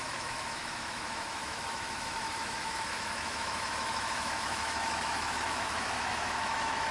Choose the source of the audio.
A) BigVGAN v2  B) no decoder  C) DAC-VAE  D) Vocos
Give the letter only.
C